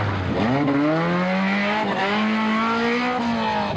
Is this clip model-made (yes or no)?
no